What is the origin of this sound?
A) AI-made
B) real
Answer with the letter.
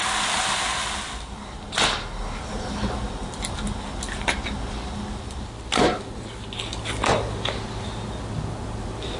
B